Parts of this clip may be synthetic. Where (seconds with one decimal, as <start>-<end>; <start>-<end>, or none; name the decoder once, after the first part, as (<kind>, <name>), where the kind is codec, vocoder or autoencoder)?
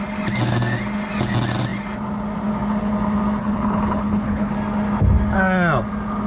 3.4-4.5 (codec, HILCodec)